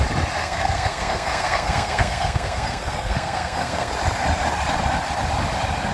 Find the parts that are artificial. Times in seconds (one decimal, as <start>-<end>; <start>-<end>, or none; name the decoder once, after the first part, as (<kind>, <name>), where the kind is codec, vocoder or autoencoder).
0.4-3.9 (codec, SNAC)